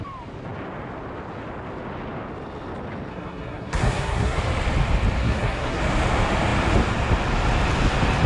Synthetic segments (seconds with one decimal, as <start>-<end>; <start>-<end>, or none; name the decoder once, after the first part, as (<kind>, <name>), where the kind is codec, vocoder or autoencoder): 3.1-4.4 (codec, SNAC); 5.2-5.8